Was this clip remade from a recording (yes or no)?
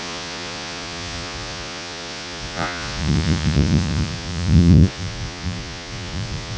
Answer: yes